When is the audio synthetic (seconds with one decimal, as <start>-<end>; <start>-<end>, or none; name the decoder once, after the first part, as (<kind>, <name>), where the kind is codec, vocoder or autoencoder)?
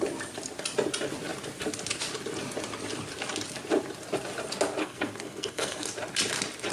4.8-5.9 (codec, SNAC)